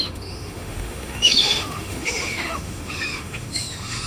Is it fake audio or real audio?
fake